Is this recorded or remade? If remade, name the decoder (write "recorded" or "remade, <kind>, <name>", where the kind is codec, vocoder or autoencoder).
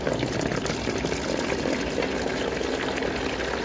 recorded